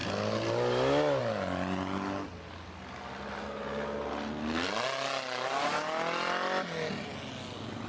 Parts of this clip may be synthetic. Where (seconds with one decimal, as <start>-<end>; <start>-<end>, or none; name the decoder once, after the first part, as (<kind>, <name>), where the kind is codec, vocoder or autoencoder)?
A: none